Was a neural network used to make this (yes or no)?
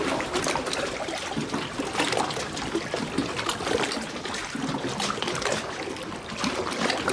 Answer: no